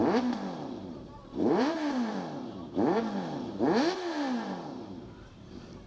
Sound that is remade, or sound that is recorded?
remade